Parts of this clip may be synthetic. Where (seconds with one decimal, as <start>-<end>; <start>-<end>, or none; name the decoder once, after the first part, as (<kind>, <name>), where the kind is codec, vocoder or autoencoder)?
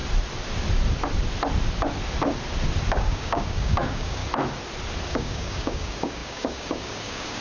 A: 2.9-4.2 (codec, DAC); 5.1-7.4